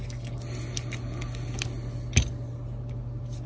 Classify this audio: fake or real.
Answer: real